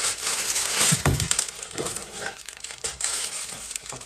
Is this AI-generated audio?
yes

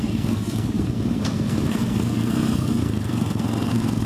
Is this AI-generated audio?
yes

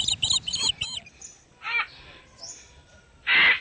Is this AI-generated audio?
no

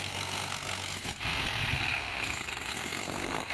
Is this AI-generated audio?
yes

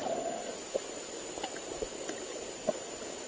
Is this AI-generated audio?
no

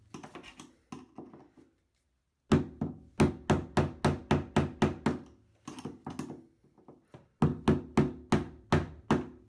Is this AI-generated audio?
no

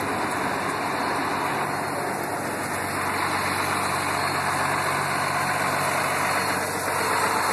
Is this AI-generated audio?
no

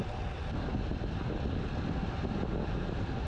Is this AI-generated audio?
no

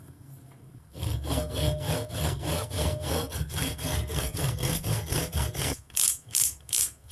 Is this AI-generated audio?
yes